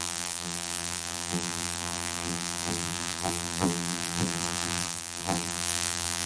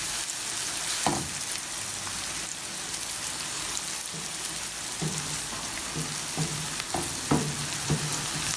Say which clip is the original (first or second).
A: second